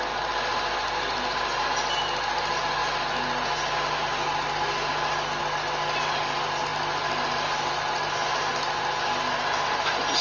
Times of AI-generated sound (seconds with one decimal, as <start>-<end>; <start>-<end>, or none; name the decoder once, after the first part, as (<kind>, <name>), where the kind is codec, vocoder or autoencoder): none